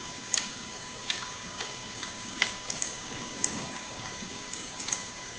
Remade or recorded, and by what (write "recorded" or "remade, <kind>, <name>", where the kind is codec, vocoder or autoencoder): remade, codec, DAC